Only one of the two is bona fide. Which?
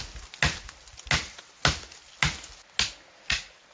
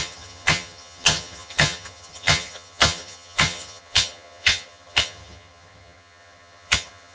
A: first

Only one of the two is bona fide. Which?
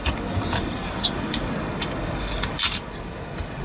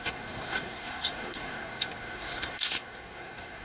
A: first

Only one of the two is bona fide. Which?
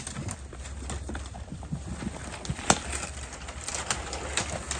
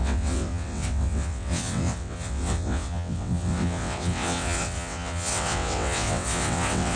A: first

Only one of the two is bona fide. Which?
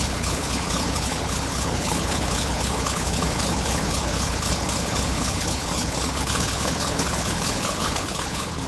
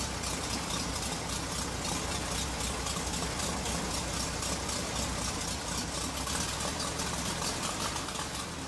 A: second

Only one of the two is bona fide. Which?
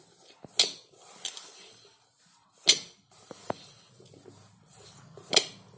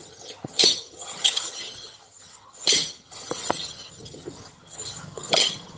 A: first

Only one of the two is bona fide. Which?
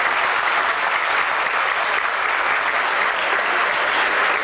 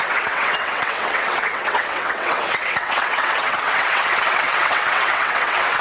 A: first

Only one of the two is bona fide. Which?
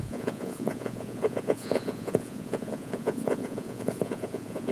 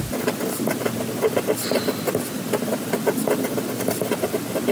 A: second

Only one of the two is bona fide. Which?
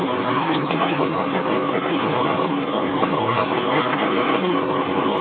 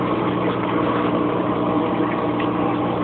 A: second